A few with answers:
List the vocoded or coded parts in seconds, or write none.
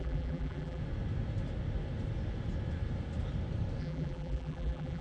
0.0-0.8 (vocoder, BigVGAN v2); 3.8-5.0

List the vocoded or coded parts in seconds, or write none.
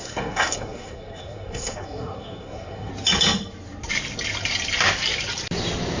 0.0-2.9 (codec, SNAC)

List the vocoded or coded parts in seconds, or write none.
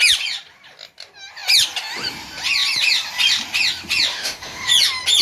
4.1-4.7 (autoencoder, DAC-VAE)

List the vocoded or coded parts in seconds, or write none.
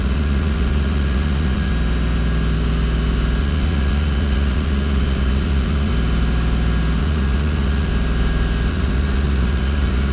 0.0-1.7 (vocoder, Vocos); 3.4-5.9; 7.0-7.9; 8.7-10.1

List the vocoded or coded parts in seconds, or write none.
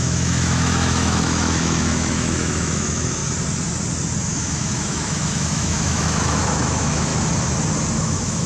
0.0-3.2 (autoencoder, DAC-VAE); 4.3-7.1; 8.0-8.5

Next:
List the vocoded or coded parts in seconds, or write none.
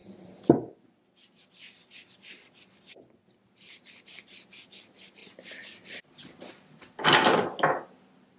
none